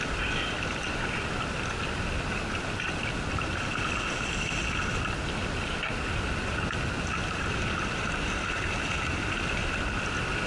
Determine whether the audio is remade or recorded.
recorded